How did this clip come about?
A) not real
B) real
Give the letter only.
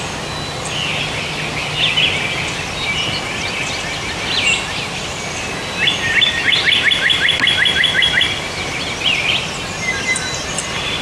B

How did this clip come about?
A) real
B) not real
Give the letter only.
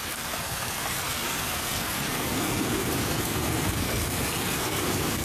B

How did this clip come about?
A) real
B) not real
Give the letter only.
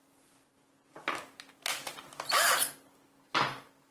A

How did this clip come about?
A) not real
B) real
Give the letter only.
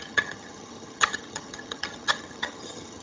A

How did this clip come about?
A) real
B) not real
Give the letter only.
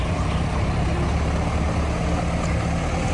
A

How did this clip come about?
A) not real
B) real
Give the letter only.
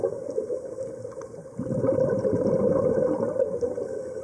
B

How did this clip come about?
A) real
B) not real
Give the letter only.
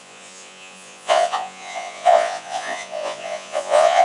B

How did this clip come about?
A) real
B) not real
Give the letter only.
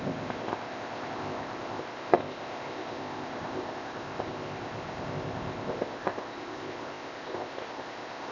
B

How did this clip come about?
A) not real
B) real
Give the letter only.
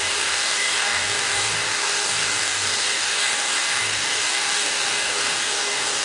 A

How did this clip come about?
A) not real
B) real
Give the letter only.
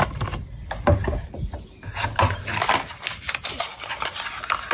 B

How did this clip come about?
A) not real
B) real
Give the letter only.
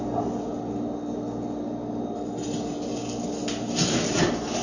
B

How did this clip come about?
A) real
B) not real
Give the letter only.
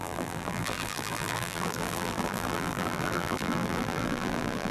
B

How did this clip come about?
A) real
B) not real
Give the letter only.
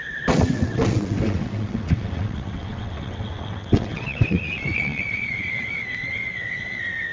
B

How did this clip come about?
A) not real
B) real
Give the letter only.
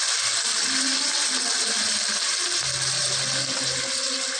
B